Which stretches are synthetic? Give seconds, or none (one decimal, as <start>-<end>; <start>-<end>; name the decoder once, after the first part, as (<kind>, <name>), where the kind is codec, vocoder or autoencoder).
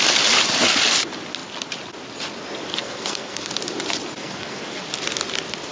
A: 2.7-3.5 (codec, SNAC); 4.2-4.8